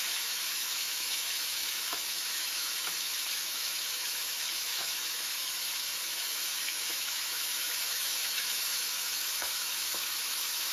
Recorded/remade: remade